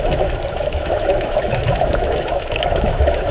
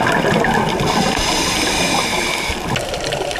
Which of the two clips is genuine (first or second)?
second